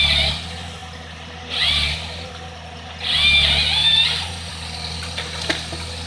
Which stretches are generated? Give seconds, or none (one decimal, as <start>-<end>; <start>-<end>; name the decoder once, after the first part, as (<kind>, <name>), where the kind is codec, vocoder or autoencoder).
none